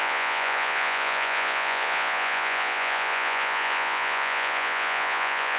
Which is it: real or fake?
fake